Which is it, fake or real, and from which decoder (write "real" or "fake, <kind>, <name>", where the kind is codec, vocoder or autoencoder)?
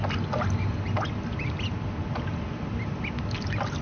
real